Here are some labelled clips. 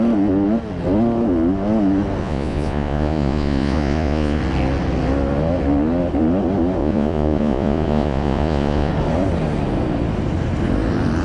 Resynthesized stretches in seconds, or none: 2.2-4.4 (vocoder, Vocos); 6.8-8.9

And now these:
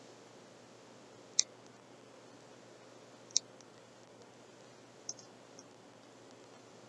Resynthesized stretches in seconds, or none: none

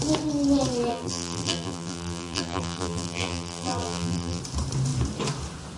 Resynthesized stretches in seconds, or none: 0.9-4.4 (vocoder, BigVGAN v2)

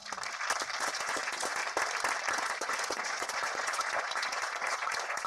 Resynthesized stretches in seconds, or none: 0.8-1.6 (vocoder, Vocos); 2.3-5.3

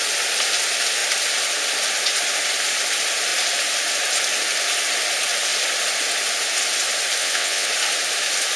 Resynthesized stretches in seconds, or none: 7.2-7.7 (vocoder, WaveNeXt)

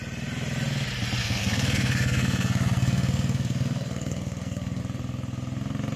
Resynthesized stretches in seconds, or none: 1.2-4.8 (codec, SNAC)

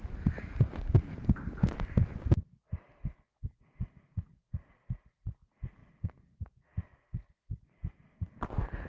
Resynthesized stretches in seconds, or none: none

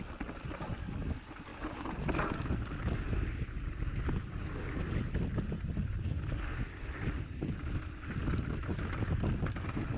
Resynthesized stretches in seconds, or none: none